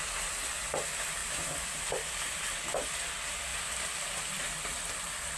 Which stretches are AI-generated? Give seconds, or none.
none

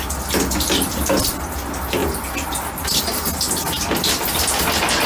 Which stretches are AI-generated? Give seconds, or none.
none

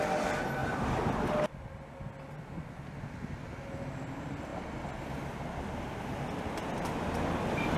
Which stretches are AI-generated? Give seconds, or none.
0.6-1.1 (vocoder, BigVGAN v2)

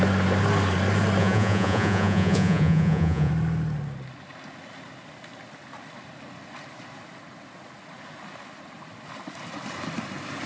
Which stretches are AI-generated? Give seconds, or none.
1.2-3.3 (vocoder, Vocos)